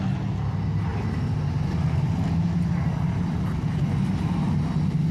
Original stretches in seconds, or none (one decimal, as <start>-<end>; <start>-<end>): 0.0-5.1